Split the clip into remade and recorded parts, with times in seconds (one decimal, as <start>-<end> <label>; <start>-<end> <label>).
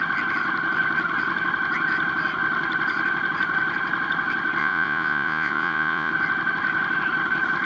0.0-4.6 recorded; 4.6-6.1 remade; 6.1-7.6 recorded